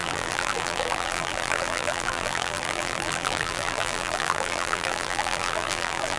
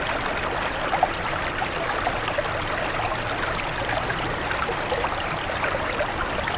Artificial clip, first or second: first